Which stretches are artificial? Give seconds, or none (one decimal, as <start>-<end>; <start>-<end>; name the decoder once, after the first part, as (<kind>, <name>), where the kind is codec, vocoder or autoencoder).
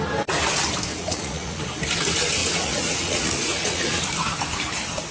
0.9-1.6 (vocoder, Vocos); 2.4-4.1